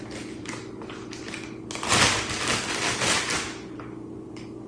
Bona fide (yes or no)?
yes